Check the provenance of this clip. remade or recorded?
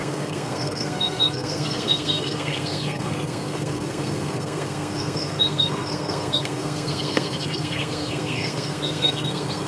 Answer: remade